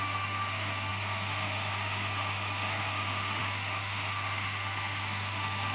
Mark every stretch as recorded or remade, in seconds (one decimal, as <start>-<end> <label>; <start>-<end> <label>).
0.0-5.7 remade